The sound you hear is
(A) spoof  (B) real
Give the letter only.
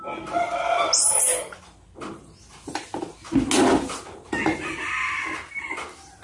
B